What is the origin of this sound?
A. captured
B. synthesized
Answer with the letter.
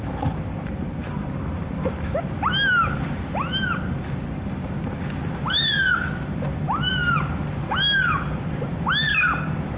A